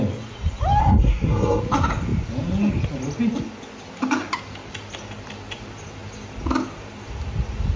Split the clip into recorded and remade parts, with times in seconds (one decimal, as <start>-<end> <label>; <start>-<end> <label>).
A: 0.0-0.8 recorded; 0.8-1.6 remade; 1.6-7.8 recorded